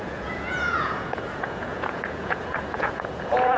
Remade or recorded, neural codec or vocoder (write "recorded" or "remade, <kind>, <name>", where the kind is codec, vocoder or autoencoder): remade, vocoder, Vocos